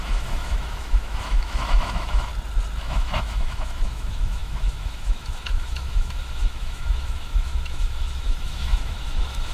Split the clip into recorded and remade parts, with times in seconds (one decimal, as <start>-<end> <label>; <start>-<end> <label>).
0.0-2.3 remade; 2.3-2.8 recorded; 2.8-9.5 remade